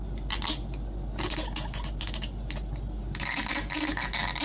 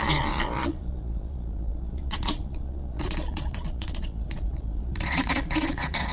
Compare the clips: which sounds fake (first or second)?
second